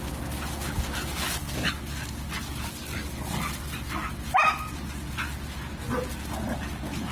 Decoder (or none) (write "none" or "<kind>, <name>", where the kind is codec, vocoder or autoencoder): none